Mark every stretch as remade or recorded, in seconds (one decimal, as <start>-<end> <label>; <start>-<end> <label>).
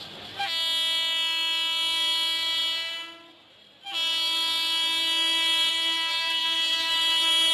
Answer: 0.0-5.7 recorded; 5.7-6.9 remade; 6.9-7.5 recorded